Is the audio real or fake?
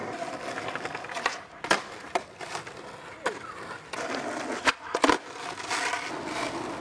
real